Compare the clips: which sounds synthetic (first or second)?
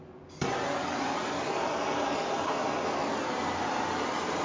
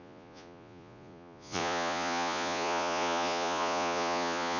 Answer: second